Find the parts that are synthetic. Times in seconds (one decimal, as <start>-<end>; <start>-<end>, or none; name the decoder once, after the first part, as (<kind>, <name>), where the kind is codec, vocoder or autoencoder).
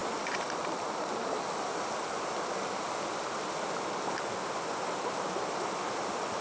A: none